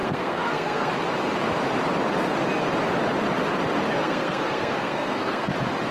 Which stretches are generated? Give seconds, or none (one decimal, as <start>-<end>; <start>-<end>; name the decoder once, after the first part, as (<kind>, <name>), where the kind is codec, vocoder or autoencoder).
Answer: 0.0-0.9 (codec, SNAC); 4.0-5.5